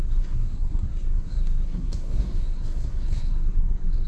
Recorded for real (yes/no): no